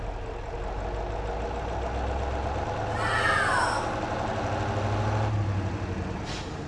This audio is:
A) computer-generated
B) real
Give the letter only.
B